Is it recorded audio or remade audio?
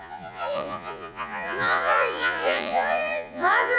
remade